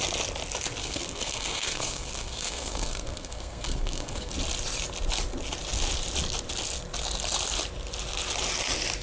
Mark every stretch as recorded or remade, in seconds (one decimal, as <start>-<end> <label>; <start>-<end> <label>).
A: 0.0-0.8 recorded; 0.8-4.3 remade; 4.3-9.0 recorded